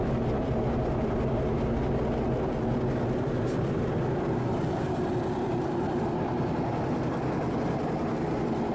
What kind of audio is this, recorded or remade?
remade